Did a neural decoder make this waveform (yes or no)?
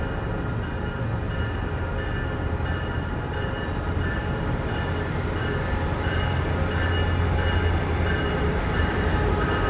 no